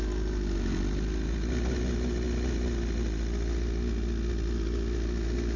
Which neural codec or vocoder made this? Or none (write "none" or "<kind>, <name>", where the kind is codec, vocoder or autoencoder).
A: none